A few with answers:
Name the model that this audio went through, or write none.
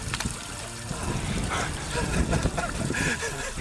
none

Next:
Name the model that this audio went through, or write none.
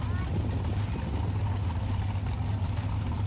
none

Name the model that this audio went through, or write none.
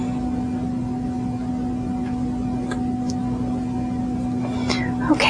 none